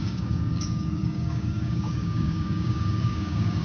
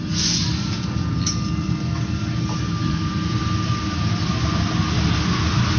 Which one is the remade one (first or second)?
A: first